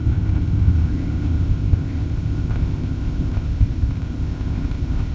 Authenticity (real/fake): fake